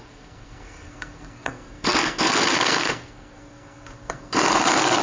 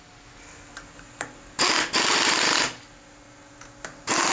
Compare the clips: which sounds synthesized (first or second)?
first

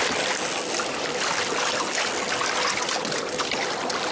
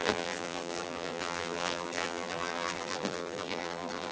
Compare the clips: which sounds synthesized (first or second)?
second